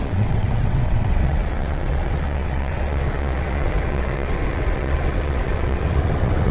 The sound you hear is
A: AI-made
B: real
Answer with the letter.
A